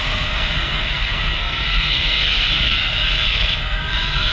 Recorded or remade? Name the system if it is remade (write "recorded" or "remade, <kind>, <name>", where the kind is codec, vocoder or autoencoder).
remade, codec, SNAC